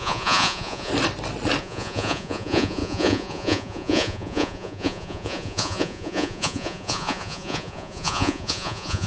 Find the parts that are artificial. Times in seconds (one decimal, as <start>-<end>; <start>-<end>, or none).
0.0-0.9; 1.6-9.1